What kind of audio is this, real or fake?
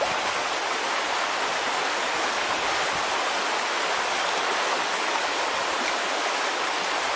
real